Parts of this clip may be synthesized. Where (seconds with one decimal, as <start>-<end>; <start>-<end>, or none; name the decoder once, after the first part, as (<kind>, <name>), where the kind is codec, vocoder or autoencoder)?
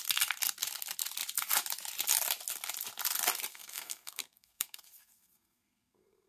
3.5-6.3 (codec, SNAC)